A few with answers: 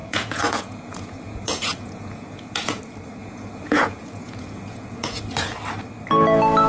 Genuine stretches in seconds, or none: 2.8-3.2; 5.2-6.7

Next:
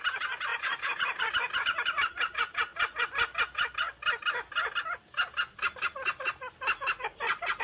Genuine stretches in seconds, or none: 2.7-7.6

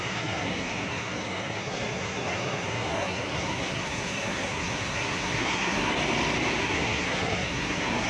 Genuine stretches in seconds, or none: 6.0-6.6

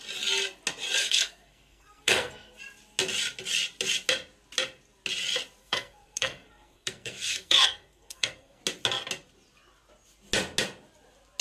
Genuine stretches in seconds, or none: 0.0-1.0; 2.6-5.6; 8.6-11.4

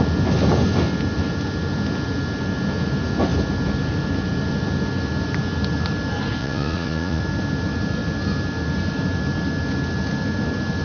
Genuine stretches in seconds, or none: 0.0-6.4; 7.2-10.8